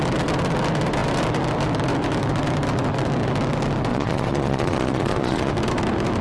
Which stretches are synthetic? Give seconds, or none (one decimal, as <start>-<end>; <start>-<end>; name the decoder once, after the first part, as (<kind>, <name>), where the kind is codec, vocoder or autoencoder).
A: 3.9-5.5 (vocoder, Vocos)